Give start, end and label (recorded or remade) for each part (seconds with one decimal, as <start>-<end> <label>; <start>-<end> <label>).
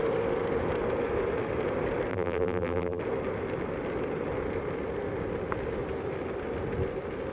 0.0-2.1 recorded; 2.1-3.0 remade; 3.0-7.3 recorded